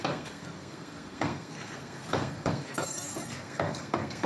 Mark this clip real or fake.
fake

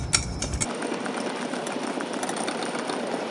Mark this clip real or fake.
real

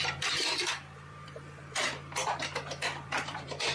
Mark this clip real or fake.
fake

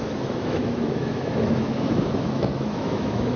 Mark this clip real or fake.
fake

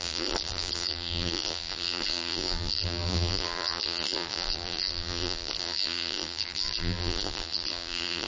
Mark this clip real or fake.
fake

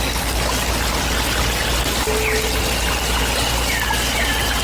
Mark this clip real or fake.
real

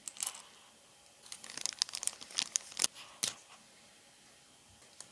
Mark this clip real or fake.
real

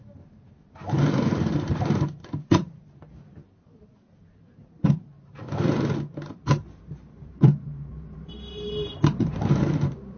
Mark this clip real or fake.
fake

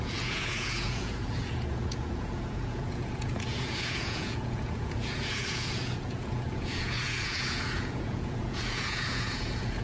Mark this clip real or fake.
fake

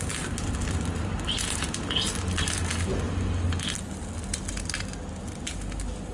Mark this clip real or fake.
real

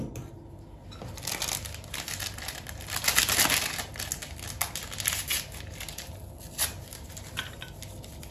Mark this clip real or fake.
real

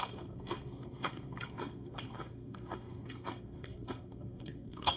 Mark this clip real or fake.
fake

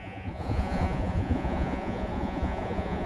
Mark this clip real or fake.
fake